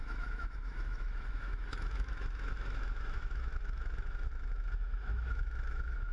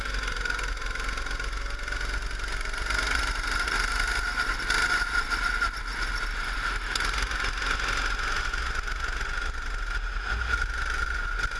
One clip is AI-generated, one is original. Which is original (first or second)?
second